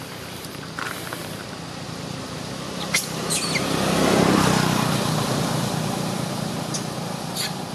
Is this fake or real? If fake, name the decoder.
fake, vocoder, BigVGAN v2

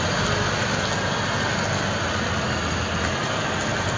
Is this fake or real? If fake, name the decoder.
real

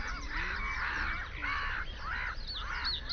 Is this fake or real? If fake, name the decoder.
real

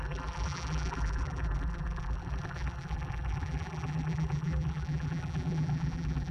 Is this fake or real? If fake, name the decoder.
fake, vocoder, BigVGAN v2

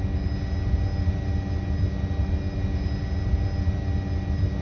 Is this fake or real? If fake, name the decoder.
real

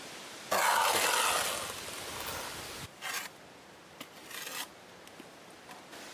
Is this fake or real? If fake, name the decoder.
real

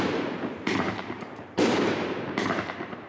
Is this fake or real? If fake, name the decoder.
fake, vocoder, BigVGAN v2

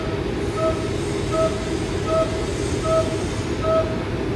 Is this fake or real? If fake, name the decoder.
real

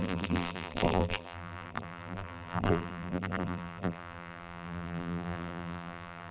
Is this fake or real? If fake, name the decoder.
fake, vocoder, BigVGAN v2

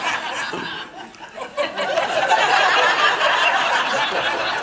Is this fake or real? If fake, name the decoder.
real